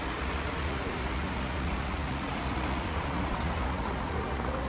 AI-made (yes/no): yes